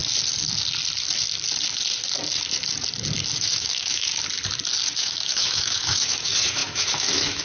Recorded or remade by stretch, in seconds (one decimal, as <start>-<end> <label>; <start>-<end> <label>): 0.0-3.4 recorded; 3.4-4.1 remade; 4.1-5.0 recorded; 5.0-7.4 remade